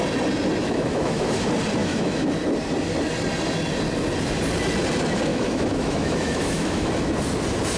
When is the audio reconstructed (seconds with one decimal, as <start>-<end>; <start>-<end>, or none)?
0.6-1.4; 1.8-2.3; 5.3-6.9